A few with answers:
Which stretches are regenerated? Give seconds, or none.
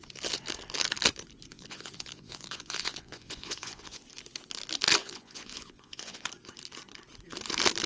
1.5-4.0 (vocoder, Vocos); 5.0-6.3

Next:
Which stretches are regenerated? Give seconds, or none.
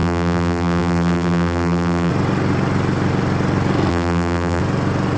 0.0-2.1 (vocoder, BigVGAN v2); 3.9-4.6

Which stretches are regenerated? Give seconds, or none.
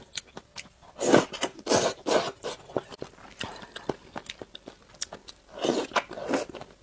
none